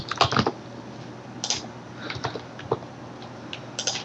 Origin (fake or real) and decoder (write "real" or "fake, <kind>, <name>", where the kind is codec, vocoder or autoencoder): real